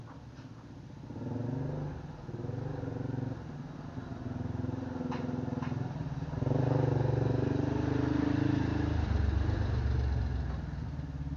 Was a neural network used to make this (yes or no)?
no